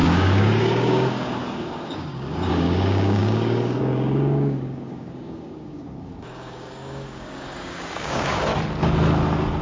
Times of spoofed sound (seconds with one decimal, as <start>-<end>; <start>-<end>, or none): 0.0-8.5